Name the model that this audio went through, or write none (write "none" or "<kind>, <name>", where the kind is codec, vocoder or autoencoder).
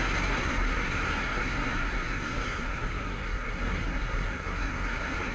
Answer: codec, SNAC